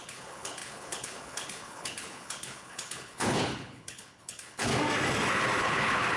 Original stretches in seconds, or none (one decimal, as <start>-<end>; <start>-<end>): 4.7-5.6